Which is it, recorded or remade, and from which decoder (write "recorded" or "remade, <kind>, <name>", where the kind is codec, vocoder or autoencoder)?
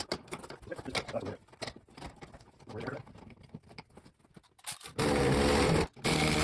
recorded